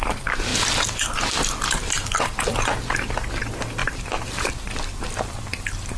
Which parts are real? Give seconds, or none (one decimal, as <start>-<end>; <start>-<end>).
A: none